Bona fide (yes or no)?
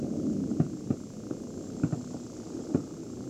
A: yes